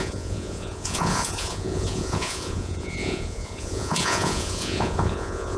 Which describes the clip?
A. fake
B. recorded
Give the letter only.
A